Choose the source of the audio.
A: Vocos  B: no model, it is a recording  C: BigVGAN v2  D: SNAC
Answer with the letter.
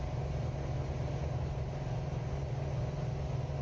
B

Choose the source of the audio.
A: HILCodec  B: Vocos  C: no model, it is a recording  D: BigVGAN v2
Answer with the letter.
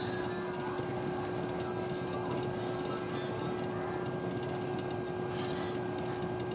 C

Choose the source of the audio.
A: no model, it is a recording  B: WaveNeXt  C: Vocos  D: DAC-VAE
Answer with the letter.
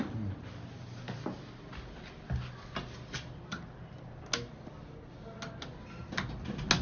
A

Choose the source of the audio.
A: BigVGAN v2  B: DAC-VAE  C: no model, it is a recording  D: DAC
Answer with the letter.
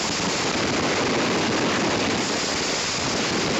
C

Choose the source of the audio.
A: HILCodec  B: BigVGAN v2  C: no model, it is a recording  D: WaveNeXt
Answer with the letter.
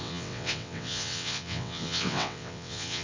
D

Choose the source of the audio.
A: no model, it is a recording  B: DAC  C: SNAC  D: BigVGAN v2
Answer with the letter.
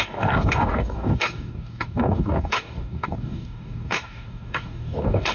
B